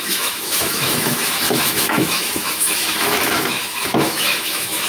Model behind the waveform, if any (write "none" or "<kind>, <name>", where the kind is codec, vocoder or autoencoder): autoencoder, DAC-VAE